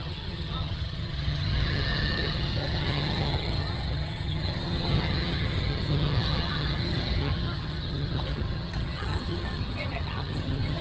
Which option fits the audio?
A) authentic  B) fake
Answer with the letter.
B